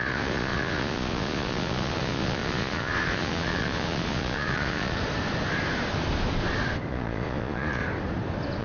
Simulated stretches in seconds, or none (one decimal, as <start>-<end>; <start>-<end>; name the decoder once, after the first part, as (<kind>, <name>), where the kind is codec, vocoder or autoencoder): 0.0-5.0 (vocoder, Vocos); 6.9-7.8